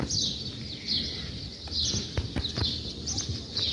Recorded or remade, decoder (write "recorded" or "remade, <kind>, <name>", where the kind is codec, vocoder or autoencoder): recorded